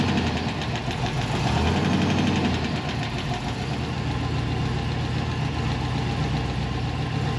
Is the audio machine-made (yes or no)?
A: no